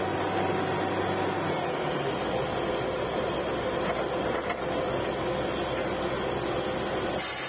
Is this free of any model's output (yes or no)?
yes